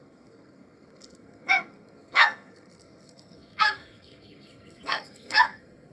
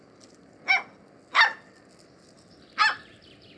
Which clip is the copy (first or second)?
first